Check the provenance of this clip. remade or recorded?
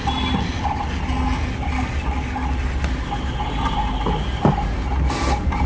recorded